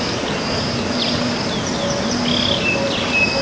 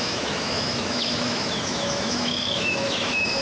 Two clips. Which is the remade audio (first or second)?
second